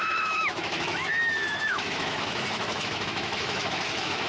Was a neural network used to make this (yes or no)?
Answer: yes